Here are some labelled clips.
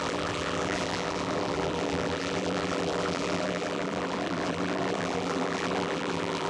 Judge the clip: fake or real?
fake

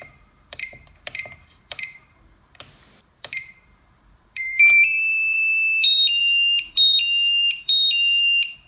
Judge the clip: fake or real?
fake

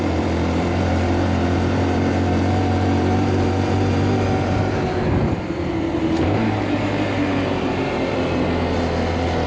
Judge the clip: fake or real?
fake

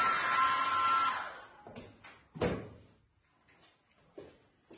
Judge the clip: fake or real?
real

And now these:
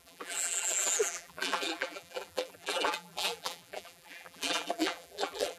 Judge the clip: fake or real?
fake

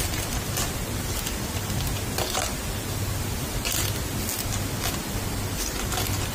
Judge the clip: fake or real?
real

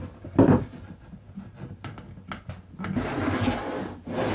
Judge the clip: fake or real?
real